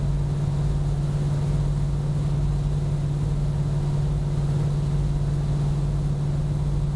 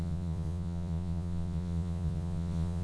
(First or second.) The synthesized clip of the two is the second